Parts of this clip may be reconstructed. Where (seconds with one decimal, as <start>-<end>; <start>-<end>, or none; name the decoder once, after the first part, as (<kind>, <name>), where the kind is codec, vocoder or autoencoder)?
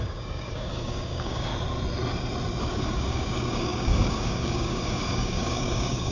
0.0-1.5 (codec, DAC); 2.6-6.1